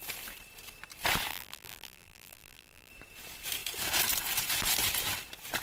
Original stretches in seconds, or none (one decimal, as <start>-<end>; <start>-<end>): 0.0-1.3; 2.9-5.6